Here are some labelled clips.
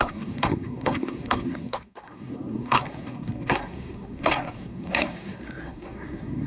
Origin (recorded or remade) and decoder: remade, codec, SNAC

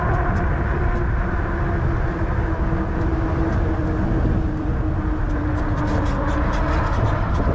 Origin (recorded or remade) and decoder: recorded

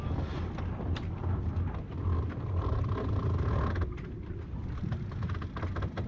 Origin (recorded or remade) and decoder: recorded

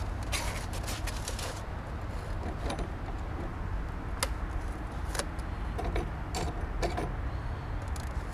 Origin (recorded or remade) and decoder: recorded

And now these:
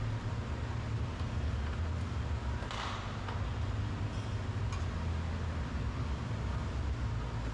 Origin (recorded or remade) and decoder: recorded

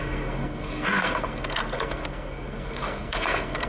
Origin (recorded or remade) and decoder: remade, codec, SNAC